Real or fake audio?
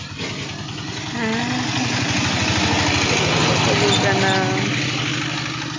real